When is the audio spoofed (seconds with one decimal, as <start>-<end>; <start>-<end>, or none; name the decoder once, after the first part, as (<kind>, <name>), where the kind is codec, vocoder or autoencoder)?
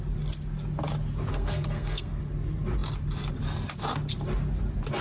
1.3-2.2 (codec, SNAC)